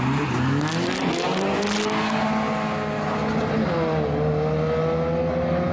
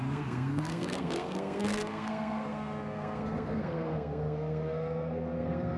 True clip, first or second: first